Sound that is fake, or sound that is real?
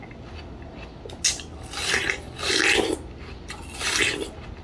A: real